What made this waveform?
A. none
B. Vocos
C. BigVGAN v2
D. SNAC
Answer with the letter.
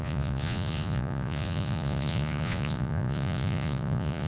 B